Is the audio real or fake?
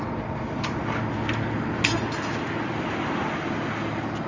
real